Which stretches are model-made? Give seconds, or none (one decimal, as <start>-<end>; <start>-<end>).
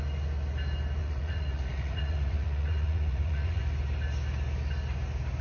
1.0-3.6